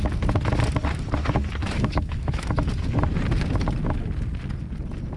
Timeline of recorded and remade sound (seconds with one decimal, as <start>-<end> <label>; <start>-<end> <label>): 0.0-1.6 recorded; 1.6-2.5 remade; 2.5-5.2 recorded